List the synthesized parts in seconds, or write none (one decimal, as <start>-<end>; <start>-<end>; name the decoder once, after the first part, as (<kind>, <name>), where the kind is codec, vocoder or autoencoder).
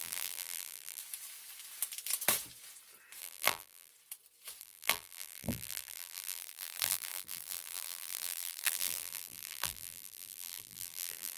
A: 0.0-1.0 (vocoder, BigVGAN v2); 3.2-3.9; 4.6-11.4